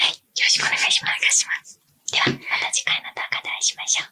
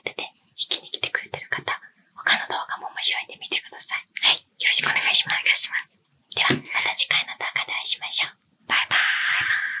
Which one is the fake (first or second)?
second